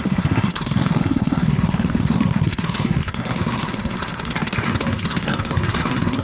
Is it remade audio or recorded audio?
remade